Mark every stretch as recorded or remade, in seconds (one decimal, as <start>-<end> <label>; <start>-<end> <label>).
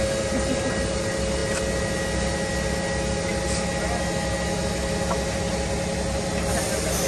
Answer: 0.0-7.1 recorded